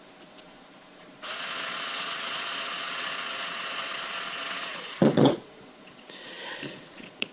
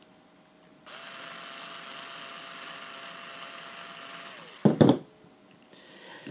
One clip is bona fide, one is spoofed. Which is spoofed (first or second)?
first